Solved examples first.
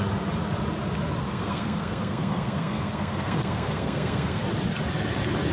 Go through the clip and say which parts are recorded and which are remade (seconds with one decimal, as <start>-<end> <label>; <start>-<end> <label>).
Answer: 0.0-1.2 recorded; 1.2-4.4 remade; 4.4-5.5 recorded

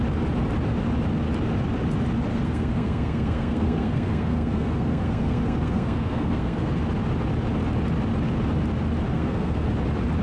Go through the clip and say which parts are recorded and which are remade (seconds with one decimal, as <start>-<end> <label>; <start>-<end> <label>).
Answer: 0.0-2.3 recorded; 2.3-6.8 remade; 6.8-9.1 recorded; 9.1-9.7 remade; 9.7-10.2 recorded

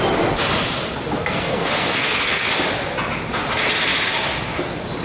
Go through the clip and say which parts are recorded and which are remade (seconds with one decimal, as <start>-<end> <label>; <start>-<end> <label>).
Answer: 0.0-1.2 recorded; 1.2-2.5 remade; 2.5-5.0 recorded